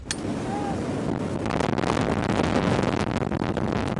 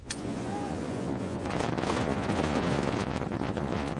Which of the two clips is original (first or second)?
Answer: first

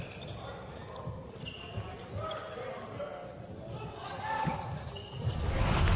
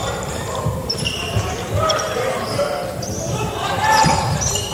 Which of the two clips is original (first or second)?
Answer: first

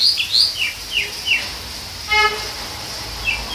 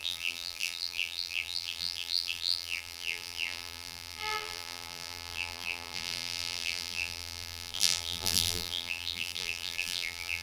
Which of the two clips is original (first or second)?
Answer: first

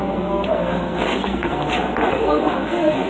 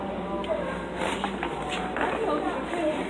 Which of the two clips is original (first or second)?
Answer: second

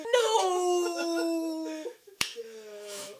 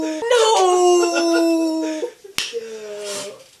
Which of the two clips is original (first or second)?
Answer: second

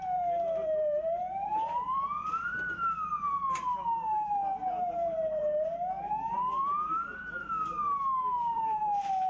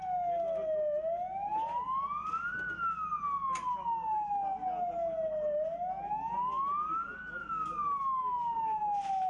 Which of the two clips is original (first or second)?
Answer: second